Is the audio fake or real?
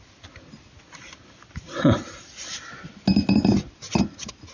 real